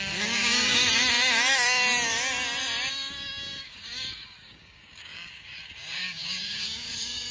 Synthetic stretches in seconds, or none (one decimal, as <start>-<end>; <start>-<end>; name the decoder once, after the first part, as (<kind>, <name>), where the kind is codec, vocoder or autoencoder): 0.0-0.8 (codec, DAC); 2.9-7.3